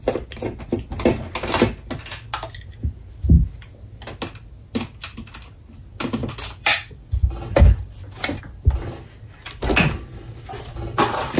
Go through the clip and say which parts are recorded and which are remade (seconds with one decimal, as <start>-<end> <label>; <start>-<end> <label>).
0.0-6.2 recorded; 6.2-8.4 remade; 8.4-11.4 recorded